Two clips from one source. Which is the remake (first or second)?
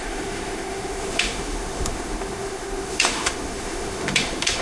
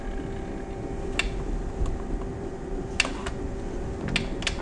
first